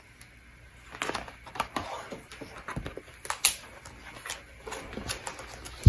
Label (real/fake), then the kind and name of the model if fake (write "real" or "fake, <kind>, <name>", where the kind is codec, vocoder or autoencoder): real